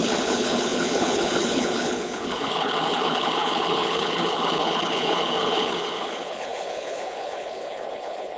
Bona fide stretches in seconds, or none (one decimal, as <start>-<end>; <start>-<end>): none